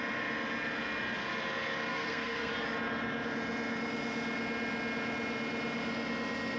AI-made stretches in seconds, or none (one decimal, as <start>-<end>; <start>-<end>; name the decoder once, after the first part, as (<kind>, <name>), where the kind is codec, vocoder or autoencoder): 1.9-2.5 (codec, SNAC)